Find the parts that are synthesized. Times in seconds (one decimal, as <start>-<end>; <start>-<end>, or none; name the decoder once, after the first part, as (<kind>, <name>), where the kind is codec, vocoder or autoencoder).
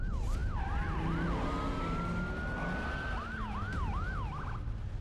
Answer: none